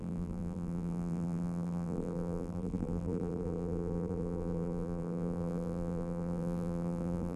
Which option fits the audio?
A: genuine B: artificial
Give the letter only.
B